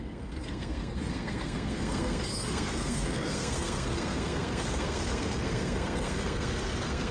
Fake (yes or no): yes